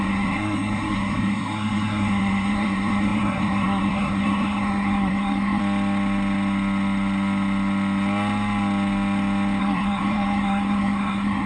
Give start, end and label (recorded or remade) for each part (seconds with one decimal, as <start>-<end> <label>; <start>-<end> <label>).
0.0-5.6 remade; 5.6-9.6 recorded; 9.6-11.5 remade